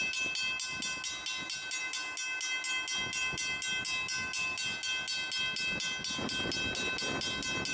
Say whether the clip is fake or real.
real